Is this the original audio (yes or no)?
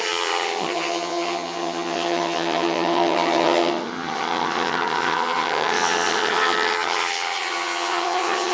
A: no